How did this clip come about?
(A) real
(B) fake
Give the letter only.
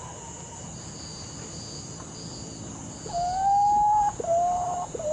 A